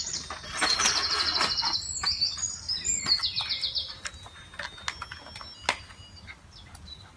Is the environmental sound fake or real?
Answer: real